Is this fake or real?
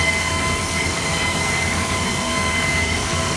fake